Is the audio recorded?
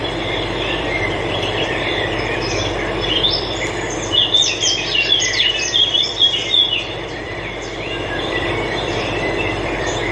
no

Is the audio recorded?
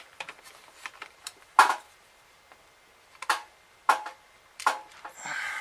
yes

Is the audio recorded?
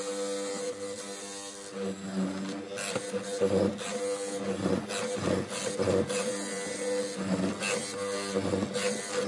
yes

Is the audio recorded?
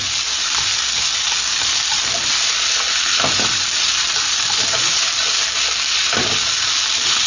yes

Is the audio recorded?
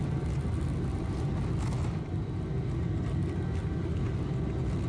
yes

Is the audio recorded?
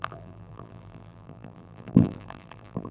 no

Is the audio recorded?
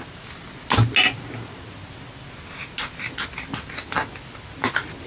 yes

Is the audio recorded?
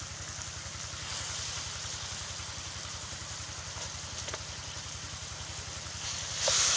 yes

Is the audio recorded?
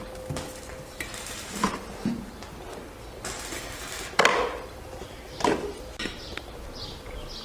yes